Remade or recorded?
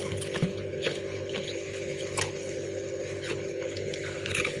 remade